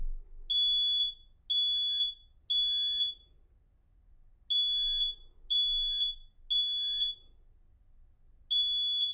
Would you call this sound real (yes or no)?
yes